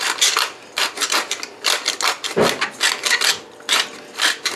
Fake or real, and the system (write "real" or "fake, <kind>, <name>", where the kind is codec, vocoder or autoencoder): real